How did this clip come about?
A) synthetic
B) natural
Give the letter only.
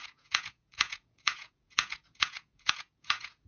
A